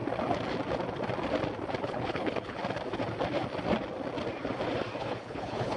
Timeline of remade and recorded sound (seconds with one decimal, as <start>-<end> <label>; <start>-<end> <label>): 0.0-1.8 recorded; 1.8-2.6 remade; 2.6-5.0 recorded; 5.0-5.8 remade